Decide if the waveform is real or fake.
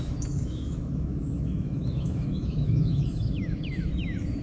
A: fake